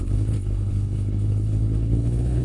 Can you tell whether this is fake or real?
fake